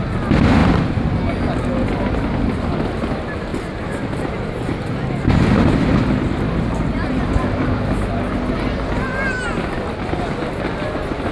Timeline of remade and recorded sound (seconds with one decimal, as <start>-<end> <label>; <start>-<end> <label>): 0.0-11.3 recorded